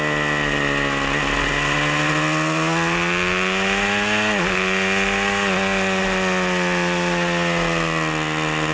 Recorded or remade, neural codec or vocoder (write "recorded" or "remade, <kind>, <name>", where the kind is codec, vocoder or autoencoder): recorded